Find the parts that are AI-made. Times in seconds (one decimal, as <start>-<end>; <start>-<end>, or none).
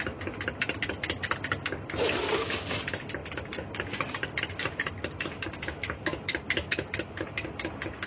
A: none